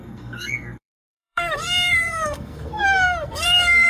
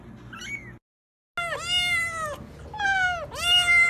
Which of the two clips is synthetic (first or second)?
first